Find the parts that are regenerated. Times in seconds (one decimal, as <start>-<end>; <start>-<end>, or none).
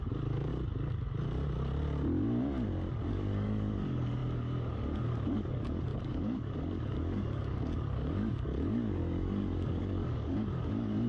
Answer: 0.0-0.5; 3.1-11.1